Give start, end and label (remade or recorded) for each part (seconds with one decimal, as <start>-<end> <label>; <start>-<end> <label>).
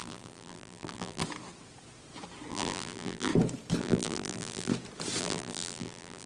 0.0-1.2 remade; 1.2-2.5 recorded; 2.5-3.3 remade; 3.3-3.8 recorded; 3.8-4.7 remade; 4.7-5.2 recorded; 5.2-6.3 remade